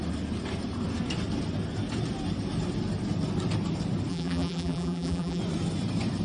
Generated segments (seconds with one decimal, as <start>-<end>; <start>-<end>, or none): 4.1-5.4